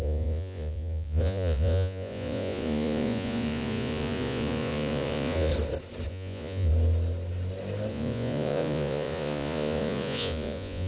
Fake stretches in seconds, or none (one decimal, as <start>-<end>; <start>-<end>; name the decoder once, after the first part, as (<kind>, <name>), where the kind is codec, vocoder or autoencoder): 0.0-5.5 (vocoder, Vocos); 6.1-6.7; 7.9-10.9